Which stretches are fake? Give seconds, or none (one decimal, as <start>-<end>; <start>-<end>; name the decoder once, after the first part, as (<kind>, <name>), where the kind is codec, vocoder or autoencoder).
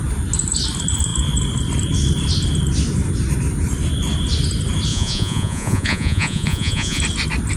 4.9-7.0 (vocoder, Vocos)